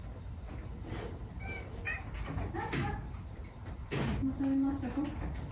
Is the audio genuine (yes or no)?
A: yes